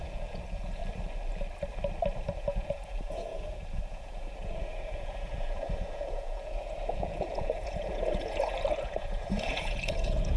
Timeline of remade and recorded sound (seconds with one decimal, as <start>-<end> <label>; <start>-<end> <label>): 0.0-0.8 remade; 0.8-2.4 recorded; 2.4-10.4 remade